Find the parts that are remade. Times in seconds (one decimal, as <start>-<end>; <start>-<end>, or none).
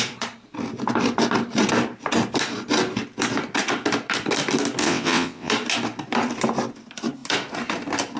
4.8-5.5